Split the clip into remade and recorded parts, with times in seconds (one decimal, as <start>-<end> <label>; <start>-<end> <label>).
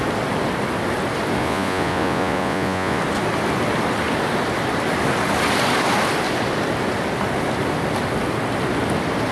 0.0-1.4 recorded; 1.4-3.0 remade; 3.0-9.3 recorded